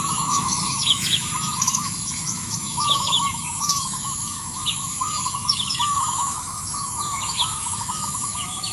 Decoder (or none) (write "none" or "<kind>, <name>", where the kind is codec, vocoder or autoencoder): autoencoder, DAC-VAE